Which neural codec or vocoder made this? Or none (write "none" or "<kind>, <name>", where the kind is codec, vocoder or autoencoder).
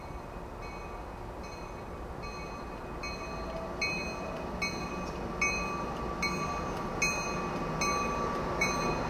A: none